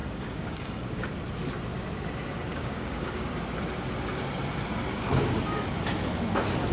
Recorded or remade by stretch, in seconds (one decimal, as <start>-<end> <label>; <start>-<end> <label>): 0.0-1.1 remade; 1.1-2.5 recorded; 2.5-3.3 remade; 3.3-4.9 recorded; 4.9-5.4 remade; 5.4-6.7 recorded